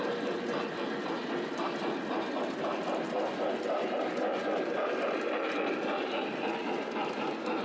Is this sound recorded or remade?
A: recorded